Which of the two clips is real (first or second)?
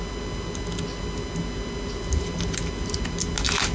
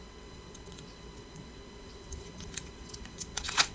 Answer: first